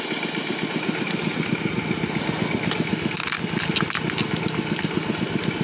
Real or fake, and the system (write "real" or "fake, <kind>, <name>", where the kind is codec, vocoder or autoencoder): real